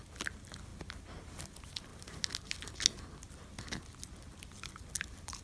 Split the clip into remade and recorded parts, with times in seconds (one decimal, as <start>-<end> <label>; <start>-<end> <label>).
0.0-5.4 recorded